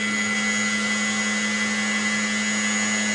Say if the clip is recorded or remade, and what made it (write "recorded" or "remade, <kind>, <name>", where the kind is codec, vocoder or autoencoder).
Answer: recorded